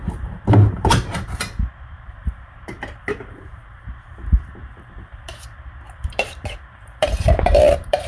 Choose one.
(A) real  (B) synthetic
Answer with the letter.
B